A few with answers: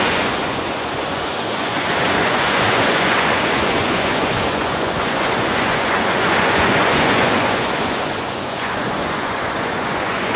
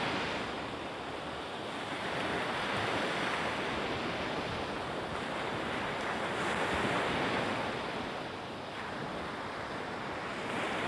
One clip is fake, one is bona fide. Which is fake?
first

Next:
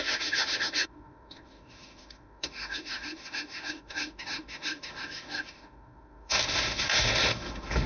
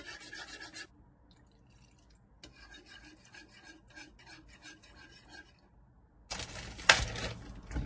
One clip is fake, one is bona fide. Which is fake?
first